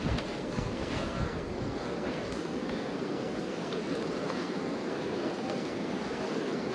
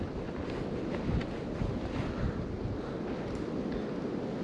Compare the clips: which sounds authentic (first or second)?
second